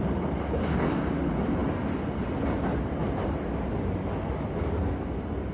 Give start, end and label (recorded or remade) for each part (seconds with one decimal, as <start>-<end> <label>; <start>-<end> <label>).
0.0-0.6 recorded; 0.6-1.1 remade; 1.1-5.5 recorded